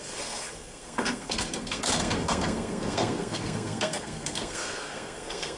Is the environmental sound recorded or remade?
remade